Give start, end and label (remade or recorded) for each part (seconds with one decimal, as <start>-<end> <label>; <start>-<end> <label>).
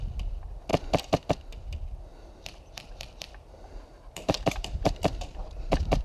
0.0-2.1 recorded; 2.1-6.0 remade